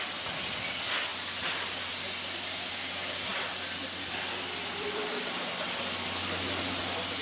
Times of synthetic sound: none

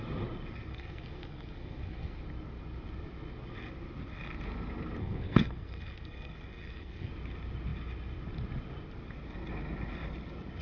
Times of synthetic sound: 0.7-2.2; 5.0-7.1